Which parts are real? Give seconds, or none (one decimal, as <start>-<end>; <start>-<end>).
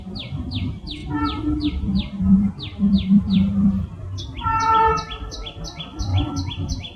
none